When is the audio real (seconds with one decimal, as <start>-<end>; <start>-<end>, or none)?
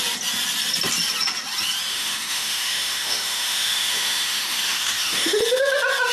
0.0-1.9; 5.4-6.1